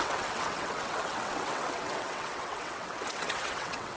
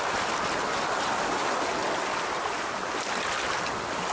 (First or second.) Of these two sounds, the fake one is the first